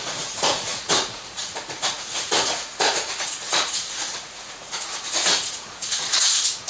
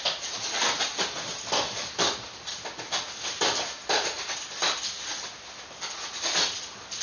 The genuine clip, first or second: second